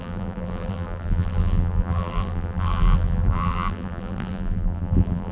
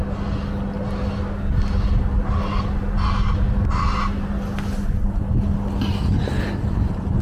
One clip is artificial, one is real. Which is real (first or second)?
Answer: second